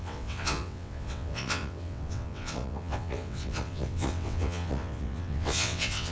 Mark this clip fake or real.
fake